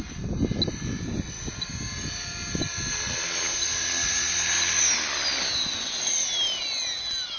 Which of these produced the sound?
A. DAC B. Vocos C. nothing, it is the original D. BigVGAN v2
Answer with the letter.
C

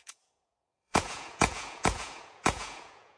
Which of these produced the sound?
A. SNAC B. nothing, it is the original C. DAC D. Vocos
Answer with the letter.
D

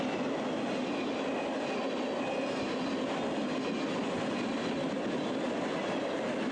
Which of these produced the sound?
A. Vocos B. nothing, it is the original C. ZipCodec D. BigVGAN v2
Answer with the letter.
B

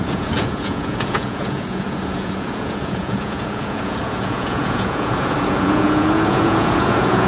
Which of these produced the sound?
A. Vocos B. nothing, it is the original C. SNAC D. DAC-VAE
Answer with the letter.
A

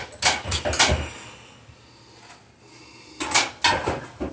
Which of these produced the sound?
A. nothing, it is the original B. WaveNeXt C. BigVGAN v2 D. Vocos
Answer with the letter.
A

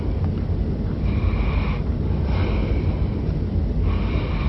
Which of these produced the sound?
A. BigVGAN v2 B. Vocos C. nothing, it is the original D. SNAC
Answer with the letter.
C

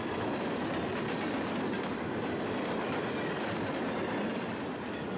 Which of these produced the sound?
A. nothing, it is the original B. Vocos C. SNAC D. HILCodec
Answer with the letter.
A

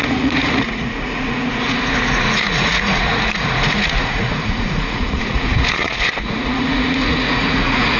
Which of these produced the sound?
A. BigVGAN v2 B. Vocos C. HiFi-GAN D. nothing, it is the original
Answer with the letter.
B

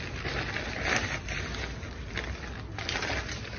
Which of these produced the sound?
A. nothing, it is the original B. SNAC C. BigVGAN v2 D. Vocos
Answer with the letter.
A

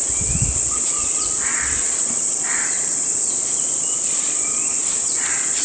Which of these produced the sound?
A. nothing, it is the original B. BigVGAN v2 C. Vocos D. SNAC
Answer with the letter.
C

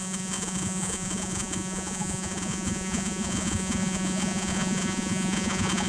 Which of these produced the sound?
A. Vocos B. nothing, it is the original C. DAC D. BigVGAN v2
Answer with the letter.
A